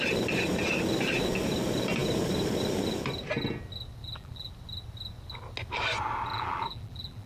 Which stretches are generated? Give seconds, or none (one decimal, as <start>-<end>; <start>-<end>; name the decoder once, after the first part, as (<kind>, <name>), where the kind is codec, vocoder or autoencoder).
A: 4.0-4.5 (vocoder, BigVGAN v2); 6.3-7.3